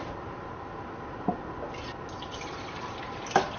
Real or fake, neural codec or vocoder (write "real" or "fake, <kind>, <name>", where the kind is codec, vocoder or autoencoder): real